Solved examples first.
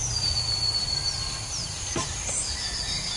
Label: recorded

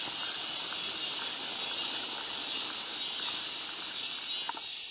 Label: recorded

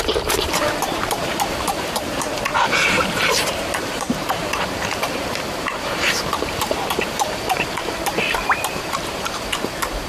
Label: remade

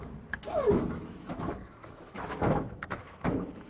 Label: remade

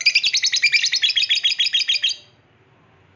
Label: recorded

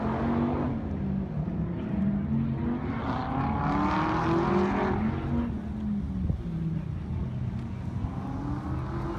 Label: recorded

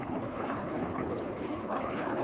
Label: remade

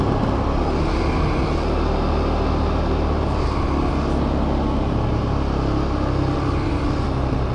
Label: recorded